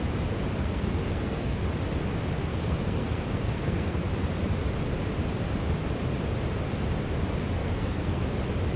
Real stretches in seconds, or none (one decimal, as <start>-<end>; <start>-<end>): 0.0-0.6; 1.6-2.4; 4.0-7.6; 8.2-8.8